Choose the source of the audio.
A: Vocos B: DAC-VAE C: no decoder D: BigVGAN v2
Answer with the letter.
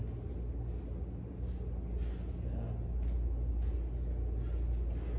C